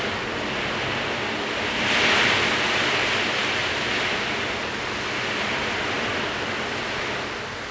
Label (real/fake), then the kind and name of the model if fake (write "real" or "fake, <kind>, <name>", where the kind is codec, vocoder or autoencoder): real